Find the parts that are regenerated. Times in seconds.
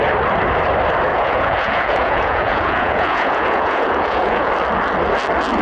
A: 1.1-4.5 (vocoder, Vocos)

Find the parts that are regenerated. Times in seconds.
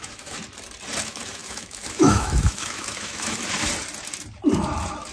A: 0.0-0.4 (autoencoder, DAC-VAE); 1.0-3.4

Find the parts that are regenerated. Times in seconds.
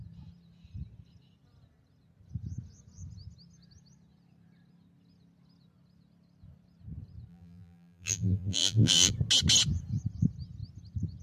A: 7.3-9.1 (vocoder, BigVGAN v2)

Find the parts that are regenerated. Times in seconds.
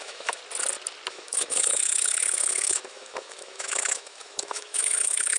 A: 0.0-0.4 (autoencoder, DAC-VAE); 1.1-5.4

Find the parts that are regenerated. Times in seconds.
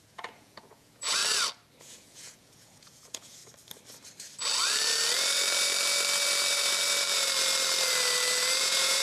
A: 0.0-1.2 (vocoder, Vocos); 1.8-3.4; 8.6-9.0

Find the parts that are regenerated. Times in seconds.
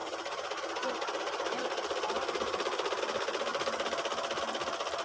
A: 0.0-3.0 (vocoder, BigVGAN v2)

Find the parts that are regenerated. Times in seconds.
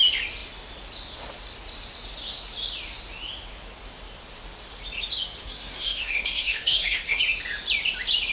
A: 5.4-7.2 (codec, SNAC)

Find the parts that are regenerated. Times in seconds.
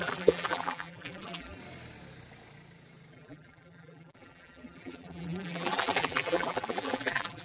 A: 0.0-1.6 (vocoder, BigVGAN v2); 3.1-7.4